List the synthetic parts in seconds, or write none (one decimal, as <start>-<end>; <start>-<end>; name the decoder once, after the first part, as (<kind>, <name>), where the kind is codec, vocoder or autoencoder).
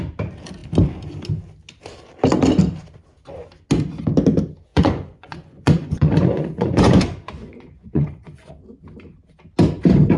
4.7-8.5 (vocoder, Vocos)